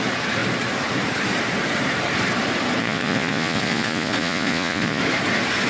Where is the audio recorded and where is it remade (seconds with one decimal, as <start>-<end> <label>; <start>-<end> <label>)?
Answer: 0.0-2.8 recorded; 2.8-5.0 remade; 5.0-5.7 recorded